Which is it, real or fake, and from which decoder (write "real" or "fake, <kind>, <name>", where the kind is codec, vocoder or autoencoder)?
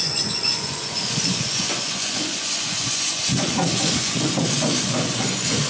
fake, vocoder, Vocos